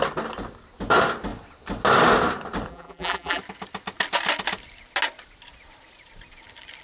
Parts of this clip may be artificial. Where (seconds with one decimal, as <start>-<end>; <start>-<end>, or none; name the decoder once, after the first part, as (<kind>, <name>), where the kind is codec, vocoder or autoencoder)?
2.7-3.4 (vocoder, BigVGAN v2)

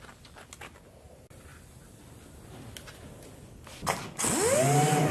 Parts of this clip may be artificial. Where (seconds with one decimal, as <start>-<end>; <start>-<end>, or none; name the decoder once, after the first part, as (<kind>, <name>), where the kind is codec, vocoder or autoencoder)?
none

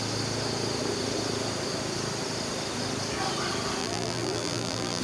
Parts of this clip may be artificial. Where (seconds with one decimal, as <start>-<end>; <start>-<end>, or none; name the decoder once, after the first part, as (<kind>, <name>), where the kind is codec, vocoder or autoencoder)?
3.8-5.0 (vocoder, BigVGAN v2)

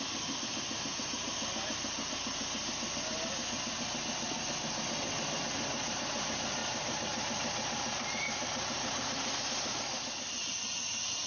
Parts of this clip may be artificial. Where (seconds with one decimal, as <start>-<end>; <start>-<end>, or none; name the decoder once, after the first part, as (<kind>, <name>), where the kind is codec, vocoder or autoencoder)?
6.6-9.4 (vocoder, BigVGAN v2)

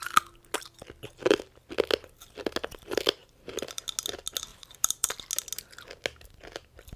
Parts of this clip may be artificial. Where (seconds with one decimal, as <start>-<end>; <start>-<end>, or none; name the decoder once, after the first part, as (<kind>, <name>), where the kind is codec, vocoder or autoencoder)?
3.2-3.8 (vocoder, BigVGAN v2); 4.5-5.1